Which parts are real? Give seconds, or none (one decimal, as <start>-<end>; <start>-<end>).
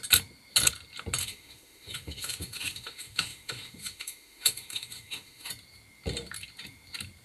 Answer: 0.0-1.2; 5.5-7.2